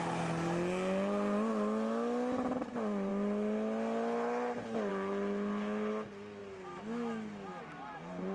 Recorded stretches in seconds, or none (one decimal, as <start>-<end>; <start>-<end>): 0.0-8.3